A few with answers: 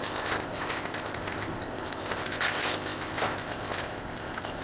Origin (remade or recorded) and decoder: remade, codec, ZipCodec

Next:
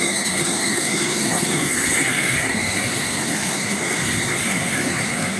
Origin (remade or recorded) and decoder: remade, codec, SNAC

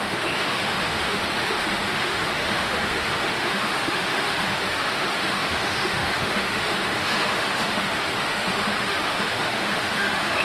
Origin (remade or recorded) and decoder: remade, autoencoder, DAC-VAE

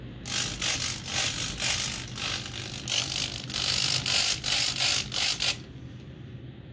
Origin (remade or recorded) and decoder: recorded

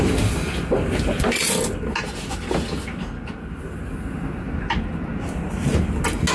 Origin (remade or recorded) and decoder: recorded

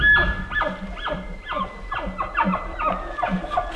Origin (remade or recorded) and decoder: recorded